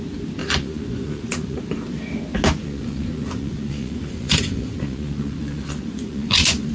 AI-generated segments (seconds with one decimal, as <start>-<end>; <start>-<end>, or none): 0.4-1.6; 2.6-6.7